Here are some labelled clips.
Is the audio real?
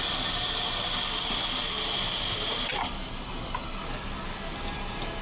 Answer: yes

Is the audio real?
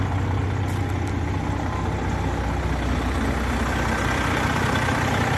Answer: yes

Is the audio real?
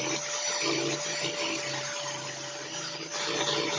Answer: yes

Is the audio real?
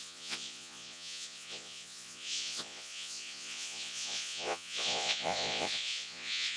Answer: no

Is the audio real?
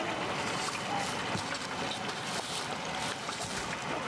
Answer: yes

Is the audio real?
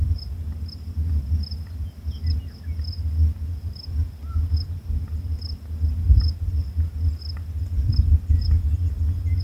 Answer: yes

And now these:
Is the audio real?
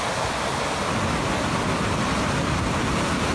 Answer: yes